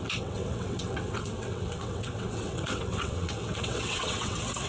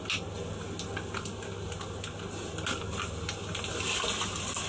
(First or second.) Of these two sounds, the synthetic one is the first